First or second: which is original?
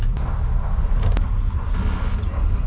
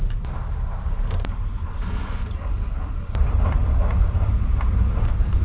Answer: first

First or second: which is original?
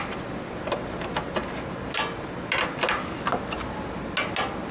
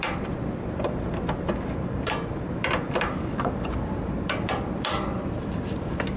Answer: first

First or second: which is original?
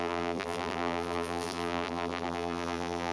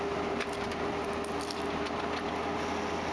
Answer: second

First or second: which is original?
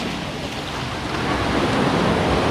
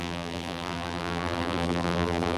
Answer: first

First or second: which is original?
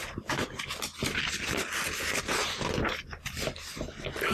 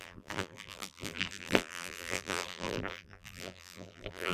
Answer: first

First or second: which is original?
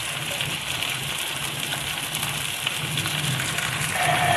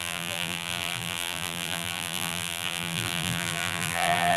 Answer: first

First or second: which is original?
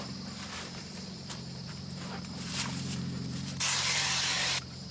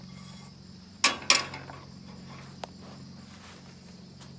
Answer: second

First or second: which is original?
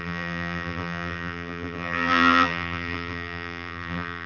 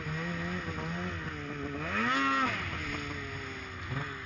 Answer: second